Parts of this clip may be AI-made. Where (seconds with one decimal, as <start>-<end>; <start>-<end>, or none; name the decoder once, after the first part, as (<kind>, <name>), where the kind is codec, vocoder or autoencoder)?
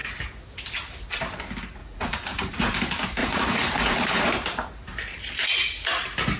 1.8-2.7 (vocoder, Vocos); 3.2-4.2